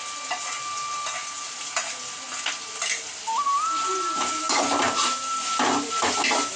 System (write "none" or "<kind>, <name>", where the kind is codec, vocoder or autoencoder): none